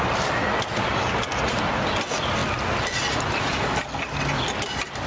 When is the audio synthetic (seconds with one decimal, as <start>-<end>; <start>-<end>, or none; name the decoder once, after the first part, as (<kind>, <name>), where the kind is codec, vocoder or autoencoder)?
none